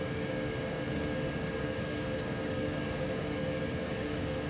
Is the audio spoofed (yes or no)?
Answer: yes